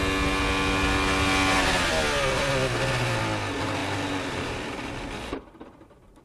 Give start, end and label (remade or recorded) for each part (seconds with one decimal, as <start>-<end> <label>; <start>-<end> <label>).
0.0-6.2 recorded